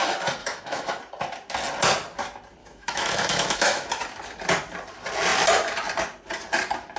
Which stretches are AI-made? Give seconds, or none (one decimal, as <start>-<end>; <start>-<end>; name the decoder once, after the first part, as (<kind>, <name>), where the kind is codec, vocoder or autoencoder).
0.4-1.0 (autoencoder, DAC-VAE); 2.6-3.9